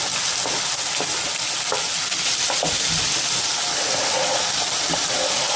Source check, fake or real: real